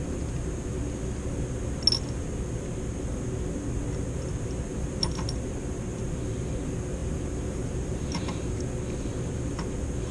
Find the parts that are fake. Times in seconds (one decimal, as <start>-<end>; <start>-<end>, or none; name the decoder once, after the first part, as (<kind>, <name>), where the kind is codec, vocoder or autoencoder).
7.0-8.6 (vocoder, BigVGAN v2)